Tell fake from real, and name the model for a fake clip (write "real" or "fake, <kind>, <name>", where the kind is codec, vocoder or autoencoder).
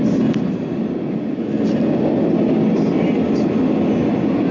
real